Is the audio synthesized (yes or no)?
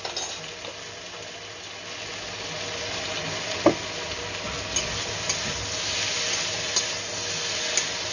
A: no